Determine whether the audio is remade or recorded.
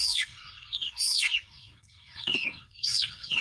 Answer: remade